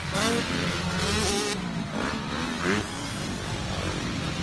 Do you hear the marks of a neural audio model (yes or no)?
no